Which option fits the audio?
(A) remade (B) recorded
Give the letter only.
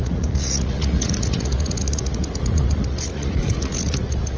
A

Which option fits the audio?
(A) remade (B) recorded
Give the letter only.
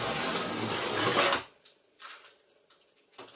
B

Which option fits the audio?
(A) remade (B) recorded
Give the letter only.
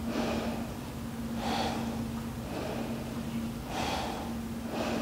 B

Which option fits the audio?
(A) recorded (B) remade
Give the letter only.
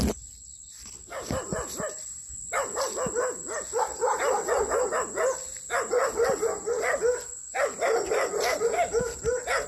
A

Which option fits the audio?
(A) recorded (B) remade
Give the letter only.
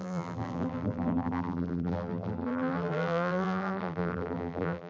B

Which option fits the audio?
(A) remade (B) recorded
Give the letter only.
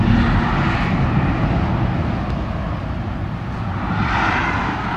B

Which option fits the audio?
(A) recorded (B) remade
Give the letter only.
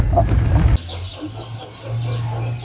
A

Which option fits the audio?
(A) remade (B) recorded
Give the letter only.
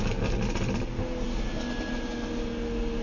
B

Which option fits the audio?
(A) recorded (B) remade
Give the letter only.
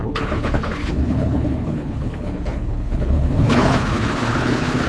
B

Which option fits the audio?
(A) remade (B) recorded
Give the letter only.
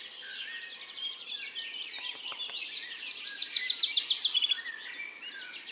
B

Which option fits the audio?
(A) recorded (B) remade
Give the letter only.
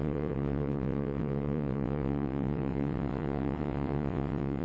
B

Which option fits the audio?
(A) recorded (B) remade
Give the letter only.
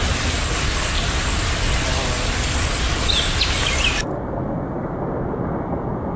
A